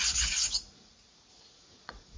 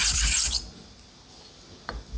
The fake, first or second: first